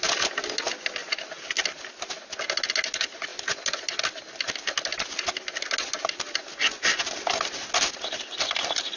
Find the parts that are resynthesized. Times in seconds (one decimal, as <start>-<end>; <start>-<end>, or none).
none